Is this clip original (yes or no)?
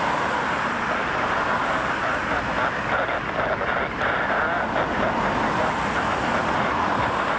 yes